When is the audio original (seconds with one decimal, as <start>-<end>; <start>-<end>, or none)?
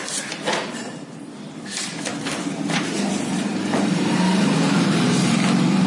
2.1-2.8